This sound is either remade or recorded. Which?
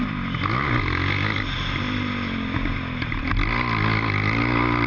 recorded